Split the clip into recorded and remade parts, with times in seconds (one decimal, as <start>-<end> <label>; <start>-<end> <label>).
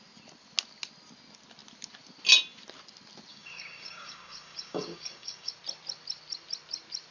0.0-3.3 recorded; 3.3-5.5 remade; 5.5-7.1 recorded